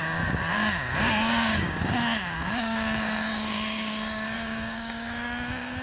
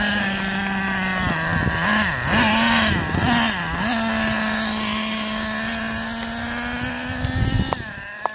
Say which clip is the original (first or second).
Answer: second